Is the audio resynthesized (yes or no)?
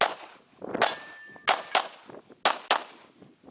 no